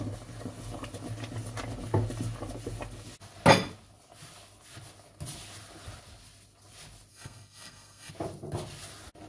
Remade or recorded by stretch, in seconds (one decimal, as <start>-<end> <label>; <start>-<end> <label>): 0.0-7.1 recorded; 7.1-8.1 remade; 8.1-9.3 recorded